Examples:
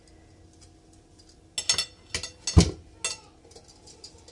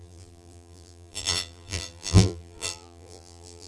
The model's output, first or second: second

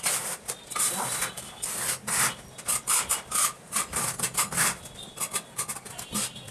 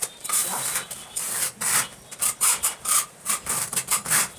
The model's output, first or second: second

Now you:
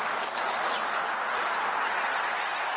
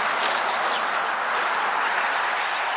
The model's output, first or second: second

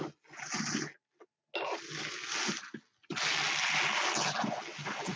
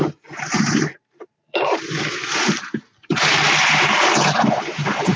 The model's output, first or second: second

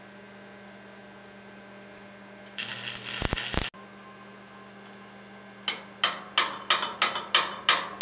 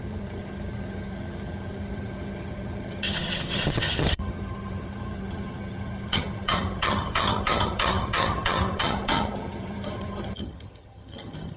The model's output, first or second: second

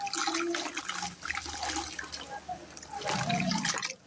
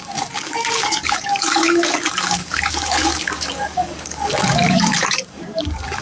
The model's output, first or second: second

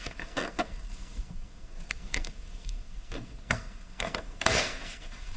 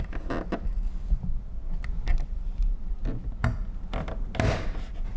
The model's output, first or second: first